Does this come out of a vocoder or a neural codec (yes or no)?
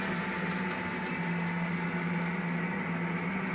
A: no